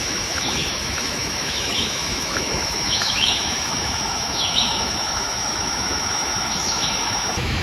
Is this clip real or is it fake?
fake